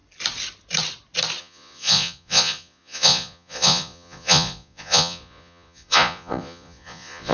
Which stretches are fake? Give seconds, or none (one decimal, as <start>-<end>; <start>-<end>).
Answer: 1.4-7.3

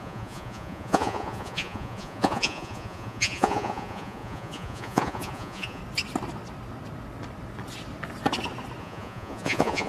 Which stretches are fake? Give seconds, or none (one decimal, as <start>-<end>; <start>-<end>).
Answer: 0.0-5.8; 8.8-9.9

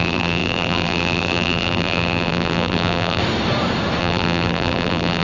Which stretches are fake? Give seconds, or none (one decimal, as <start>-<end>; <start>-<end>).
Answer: 0.0-3.2; 4.0-5.2

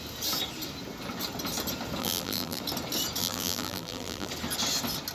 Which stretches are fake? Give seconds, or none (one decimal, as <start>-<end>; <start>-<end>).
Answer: 2.0-2.6; 3.2-4.3

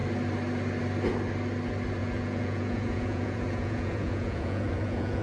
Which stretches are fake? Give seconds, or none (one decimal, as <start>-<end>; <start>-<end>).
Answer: 2.0-5.2